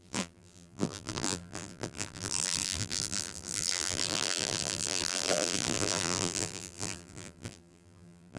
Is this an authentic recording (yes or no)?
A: no